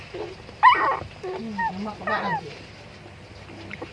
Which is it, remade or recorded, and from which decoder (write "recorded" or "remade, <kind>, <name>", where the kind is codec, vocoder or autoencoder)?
recorded